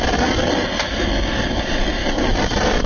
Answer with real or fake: real